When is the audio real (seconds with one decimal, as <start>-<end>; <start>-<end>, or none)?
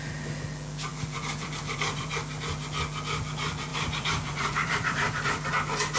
0.0-0.9; 2.1-3.7; 5.5-6.0